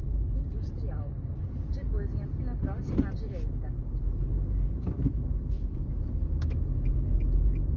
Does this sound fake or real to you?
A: real